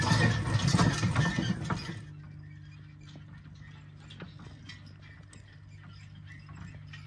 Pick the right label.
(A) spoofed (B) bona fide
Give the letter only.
B